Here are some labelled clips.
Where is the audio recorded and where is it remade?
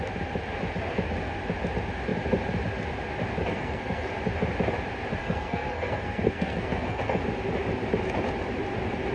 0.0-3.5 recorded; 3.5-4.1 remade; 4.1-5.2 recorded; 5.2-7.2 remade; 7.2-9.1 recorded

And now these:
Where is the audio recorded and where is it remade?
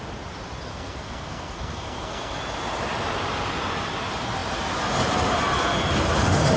0.0-0.7 recorded; 0.7-2.4 remade; 2.4-6.6 recorded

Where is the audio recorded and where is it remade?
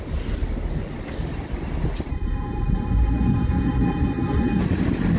0.0-2.1 recorded; 2.1-4.6 remade; 4.6-5.2 recorded